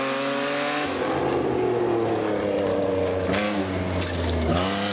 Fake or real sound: real